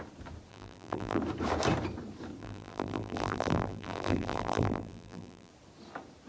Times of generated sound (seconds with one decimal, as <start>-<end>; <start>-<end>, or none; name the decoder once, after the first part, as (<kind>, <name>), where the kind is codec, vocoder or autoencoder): 0.5-1.2 (vocoder, BigVGAN v2); 2.4-5.5